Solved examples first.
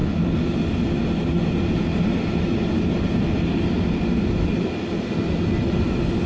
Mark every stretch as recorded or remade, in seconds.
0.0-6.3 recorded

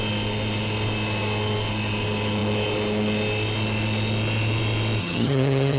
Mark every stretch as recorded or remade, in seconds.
0.0-5.0 recorded; 5.0-5.8 remade

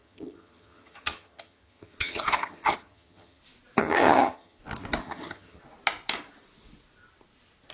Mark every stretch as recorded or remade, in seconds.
0.0-3.4 remade; 3.4-3.8 recorded; 3.8-4.6 remade; 4.6-5.0 recorded; 5.0-5.6 remade; 5.6-7.7 recorded

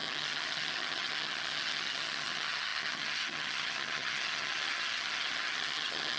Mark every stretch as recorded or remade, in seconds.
0.0-6.2 remade